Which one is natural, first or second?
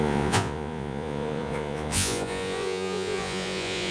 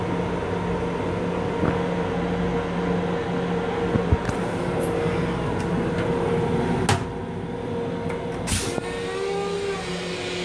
second